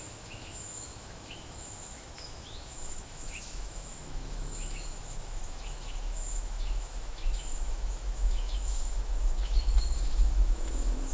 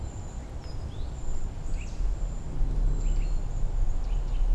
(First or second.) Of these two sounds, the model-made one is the first